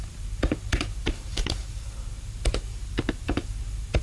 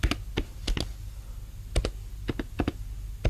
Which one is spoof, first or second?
first